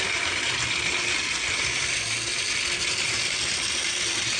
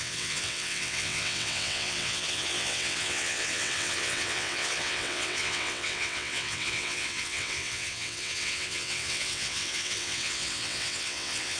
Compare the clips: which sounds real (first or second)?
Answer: first